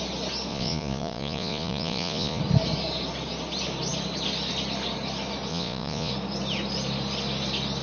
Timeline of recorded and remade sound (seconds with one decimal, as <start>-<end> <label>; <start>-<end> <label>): 0.0-0.5 recorded; 0.5-2.4 remade; 2.4-5.5 recorded; 5.5-6.1 remade; 6.1-7.8 recorded